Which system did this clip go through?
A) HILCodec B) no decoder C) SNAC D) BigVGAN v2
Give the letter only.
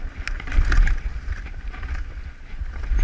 B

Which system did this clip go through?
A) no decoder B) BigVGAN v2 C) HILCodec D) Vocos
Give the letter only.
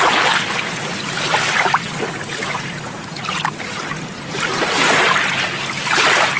A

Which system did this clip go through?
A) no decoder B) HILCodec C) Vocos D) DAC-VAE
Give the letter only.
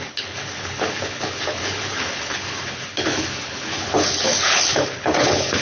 B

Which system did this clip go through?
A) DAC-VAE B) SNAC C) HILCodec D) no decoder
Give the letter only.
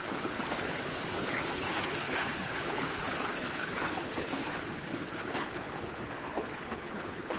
C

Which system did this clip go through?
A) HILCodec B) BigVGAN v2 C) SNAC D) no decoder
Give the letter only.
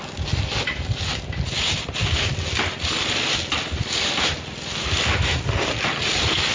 D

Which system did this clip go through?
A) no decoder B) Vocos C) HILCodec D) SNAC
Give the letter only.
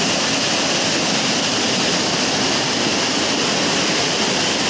A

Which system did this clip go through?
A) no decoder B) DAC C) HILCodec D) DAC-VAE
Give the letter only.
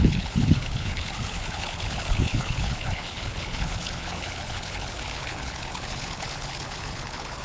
C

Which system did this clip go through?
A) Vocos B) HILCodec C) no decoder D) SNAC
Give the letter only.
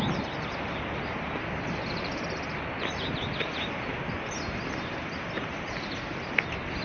C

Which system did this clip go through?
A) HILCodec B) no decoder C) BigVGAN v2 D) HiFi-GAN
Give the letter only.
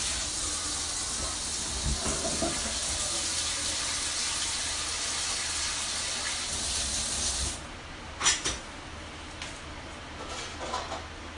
B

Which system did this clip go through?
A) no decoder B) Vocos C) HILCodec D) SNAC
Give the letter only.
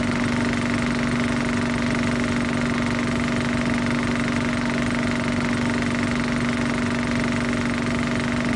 A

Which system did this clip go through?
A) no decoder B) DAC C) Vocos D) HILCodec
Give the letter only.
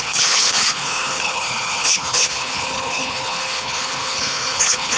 D